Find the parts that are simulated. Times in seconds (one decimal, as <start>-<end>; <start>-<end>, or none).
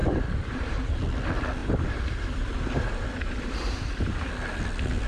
0.0-1.0; 1.6-4.3